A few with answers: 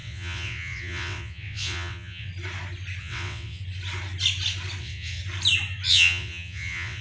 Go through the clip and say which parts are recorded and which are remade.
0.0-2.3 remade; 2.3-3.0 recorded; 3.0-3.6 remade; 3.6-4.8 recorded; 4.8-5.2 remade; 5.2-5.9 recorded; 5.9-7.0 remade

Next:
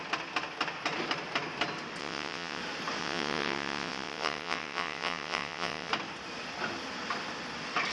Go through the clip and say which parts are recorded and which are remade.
0.0-2.0 recorded; 2.0-2.6 remade; 2.6-3.0 recorded; 3.0-5.9 remade; 5.9-7.9 recorded

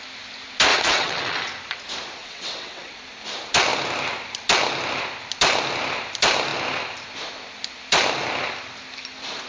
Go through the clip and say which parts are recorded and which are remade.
0.0-0.7 recorded; 0.7-1.5 remade; 1.5-2.2 recorded; 2.2-2.9 remade; 2.9-9.5 recorded